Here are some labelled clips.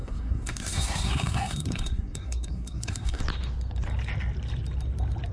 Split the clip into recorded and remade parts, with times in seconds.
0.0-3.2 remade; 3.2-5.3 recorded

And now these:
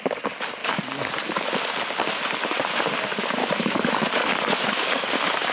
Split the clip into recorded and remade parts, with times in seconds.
0.0-0.6 recorded; 0.6-1.4 remade; 1.4-3.4 recorded; 3.4-5.1 remade; 5.1-5.5 recorded